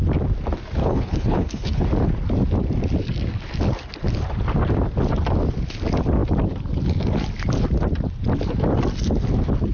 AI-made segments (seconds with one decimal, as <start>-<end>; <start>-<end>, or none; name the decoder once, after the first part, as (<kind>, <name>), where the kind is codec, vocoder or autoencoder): 0.8-1.8 (codec, HILCodec)